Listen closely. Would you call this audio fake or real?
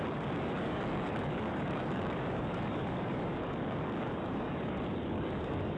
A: fake